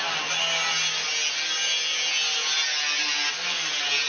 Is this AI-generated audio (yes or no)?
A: no